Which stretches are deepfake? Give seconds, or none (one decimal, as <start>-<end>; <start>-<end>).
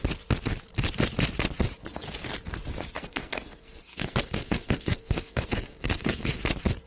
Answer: 2.9-6.4